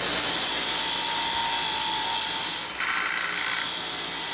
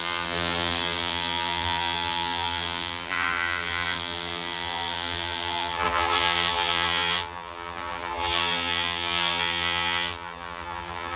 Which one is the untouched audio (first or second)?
first